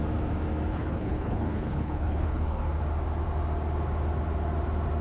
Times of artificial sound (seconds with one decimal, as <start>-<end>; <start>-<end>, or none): 0.7-2.6